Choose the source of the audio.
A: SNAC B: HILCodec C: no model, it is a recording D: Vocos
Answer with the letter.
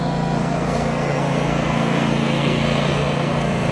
A